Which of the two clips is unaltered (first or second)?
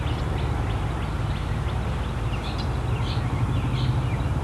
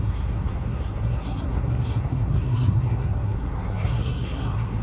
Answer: first